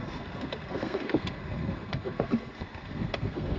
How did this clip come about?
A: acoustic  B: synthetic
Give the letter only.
B